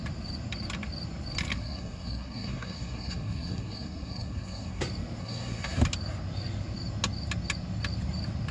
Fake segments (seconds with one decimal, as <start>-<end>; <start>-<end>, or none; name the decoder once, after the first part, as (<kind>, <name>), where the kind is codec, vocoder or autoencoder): 1.5-4.8 (codec, SNAC); 5.2-5.8

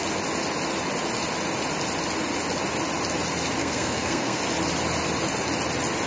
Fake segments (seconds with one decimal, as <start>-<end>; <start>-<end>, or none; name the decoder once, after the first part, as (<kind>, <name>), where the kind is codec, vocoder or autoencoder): 3.6-4.4 (codec, SNAC)

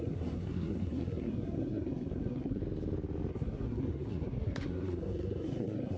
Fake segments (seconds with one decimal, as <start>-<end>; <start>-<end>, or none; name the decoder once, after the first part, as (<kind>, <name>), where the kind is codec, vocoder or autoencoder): 0.0-2.6 (codec, SNAC); 3.3-6.0

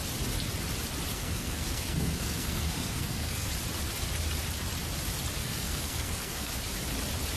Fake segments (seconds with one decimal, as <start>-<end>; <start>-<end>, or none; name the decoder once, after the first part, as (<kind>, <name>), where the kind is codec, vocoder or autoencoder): 1.1-3.5 (codec, SNAC); 5.4-6.5

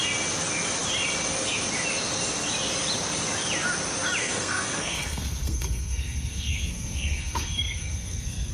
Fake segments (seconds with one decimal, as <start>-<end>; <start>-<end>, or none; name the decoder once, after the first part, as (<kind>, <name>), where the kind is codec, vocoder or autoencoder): 4.2-8.5 (codec, SNAC)

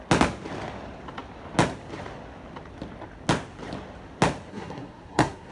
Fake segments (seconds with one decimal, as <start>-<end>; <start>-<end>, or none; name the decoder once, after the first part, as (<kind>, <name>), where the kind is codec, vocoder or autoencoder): 4.5-5.5 (codec, SNAC)

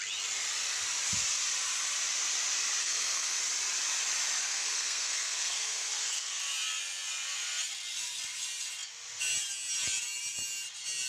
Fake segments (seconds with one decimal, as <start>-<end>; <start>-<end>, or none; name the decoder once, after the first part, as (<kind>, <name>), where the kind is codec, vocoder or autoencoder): 2.8-3.4 (codec, SNAC); 4.4-6.4

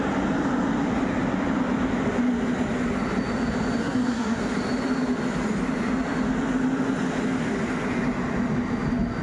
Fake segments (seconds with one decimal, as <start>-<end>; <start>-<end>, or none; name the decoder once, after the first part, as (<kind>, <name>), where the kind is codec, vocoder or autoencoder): 3.8-4.4 (codec, SNAC)